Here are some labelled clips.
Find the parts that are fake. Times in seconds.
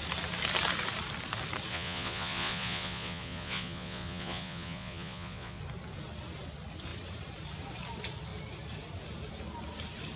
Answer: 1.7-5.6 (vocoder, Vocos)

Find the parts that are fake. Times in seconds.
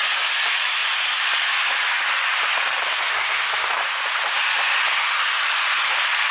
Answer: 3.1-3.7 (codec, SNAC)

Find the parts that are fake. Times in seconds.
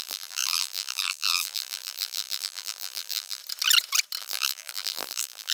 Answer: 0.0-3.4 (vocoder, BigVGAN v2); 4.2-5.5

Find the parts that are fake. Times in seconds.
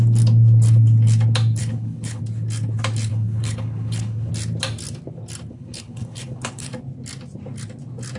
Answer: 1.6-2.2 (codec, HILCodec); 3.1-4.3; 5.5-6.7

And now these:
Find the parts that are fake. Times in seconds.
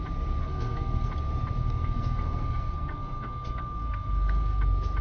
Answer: 0.4-1.1 (codec, SNAC); 1.6-4.6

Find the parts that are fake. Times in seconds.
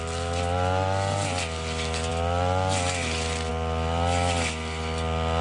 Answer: none